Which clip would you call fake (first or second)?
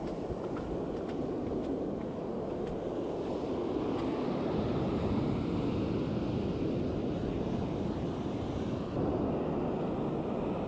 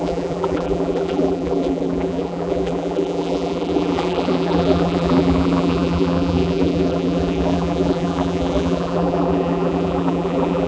second